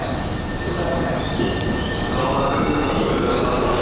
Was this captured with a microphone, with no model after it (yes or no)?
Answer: yes